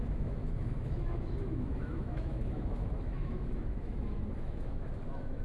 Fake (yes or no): yes